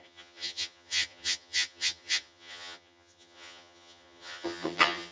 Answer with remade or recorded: remade